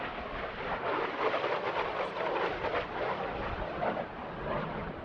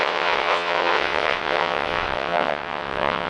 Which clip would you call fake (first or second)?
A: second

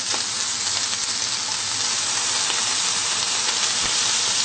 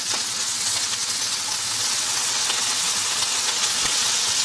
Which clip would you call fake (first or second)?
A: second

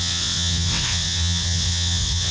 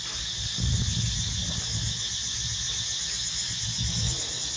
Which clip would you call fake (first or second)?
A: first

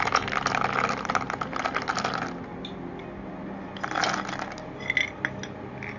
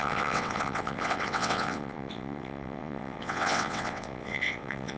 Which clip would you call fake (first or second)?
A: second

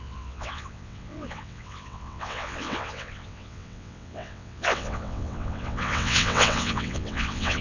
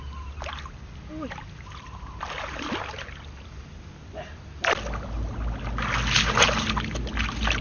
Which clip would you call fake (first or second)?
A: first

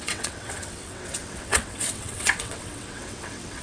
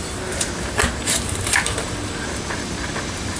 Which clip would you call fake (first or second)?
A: first